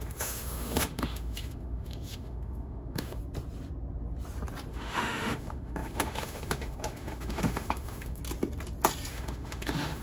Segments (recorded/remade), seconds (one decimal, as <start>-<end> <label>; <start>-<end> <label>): 0.0-3.2 remade; 3.2-4.7 recorded; 4.7-8.2 remade; 8.2-9.1 recorded; 9.1-10.0 remade